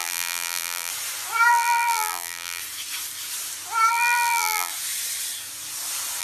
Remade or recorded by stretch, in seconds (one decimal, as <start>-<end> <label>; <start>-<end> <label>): 0.0-0.9 remade; 0.9-1.5 recorded; 1.5-2.6 remade; 2.6-3.9 recorded; 3.9-4.7 remade; 4.7-6.2 recorded